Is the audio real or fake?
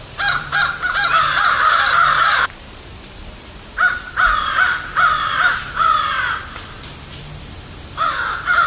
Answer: fake